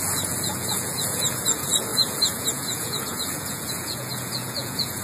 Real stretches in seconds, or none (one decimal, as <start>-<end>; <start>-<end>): none